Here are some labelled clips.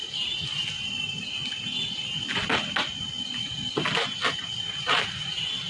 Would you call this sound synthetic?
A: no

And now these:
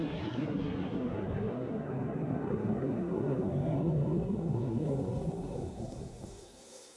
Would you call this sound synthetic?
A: yes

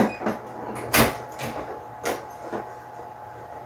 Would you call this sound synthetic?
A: no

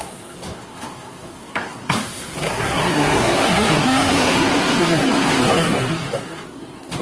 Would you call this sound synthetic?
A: yes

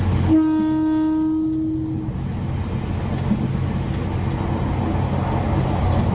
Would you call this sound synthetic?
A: no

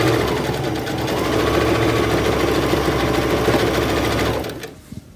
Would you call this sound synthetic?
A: no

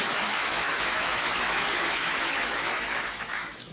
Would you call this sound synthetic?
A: yes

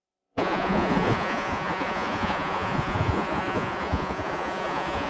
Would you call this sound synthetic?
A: yes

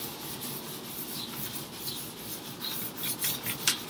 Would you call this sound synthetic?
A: no